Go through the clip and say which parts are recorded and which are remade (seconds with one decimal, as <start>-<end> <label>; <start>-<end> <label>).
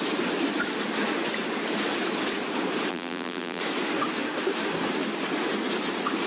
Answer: 0.0-2.9 recorded; 2.9-3.6 remade; 3.6-6.3 recorded